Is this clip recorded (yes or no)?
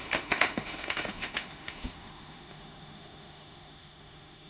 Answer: no